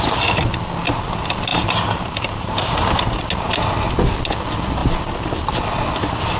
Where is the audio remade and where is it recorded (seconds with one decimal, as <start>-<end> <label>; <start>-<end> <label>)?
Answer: 0.0-1.5 recorded; 1.5-3.2 remade; 3.2-6.4 recorded

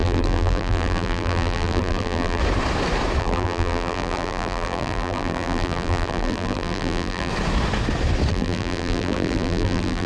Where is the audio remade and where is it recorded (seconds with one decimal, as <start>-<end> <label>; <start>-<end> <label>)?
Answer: 0.0-2.4 remade; 2.4-3.2 recorded; 3.2-7.3 remade; 7.3-8.3 recorded; 8.3-10.1 remade

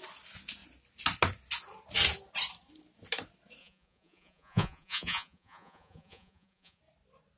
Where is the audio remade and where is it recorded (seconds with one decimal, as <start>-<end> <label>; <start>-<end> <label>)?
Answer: 0.0-3.6 recorded; 3.6-6.8 remade; 6.8-7.4 recorded

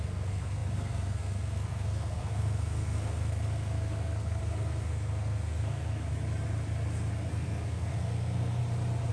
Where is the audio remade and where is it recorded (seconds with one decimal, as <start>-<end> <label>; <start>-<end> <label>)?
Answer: 0.0-6.1 remade; 6.1-7.3 recorded; 7.3-8.6 remade; 8.6-9.1 recorded

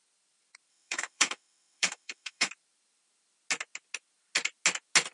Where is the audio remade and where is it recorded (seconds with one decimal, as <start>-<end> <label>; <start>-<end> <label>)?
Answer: 0.0-0.7 recorded; 0.7-2.5 remade; 2.5-5.1 recorded